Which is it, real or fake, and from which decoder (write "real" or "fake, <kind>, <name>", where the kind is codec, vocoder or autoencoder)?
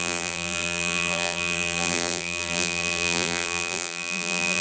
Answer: fake, vocoder, BigVGAN v2